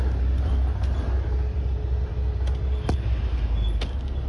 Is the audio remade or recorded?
recorded